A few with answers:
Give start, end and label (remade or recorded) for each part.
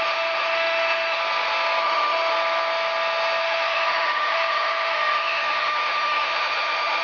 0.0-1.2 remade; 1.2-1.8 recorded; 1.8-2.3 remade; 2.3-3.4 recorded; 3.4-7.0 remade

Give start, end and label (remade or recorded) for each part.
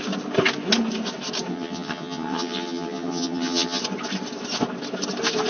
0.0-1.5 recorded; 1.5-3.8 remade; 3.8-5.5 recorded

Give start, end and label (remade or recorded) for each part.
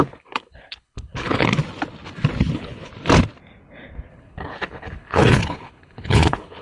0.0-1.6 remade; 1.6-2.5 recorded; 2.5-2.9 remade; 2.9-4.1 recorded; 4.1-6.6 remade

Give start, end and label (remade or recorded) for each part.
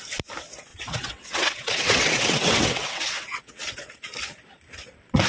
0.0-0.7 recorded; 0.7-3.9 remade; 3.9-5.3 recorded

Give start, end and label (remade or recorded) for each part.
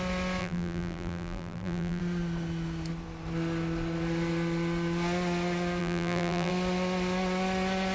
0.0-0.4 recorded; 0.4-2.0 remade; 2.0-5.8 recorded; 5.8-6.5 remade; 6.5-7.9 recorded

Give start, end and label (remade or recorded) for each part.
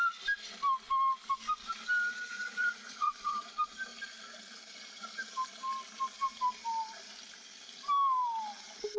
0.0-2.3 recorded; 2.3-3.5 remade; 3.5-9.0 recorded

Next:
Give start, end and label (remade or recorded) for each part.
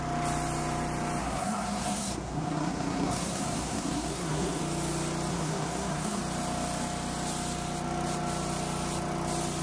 0.0-1.2 recorded; 1.2-4.6 remade; 4.6-5.3 recorded; 5.3-6.2 remade; 6.2-9.6 recorded